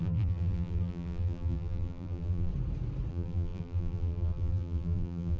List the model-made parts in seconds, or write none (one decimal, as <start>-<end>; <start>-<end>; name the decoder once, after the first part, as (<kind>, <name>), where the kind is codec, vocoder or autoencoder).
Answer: 0.0-2.5 (vocoder, BigVGAN v2); 3.1-5.4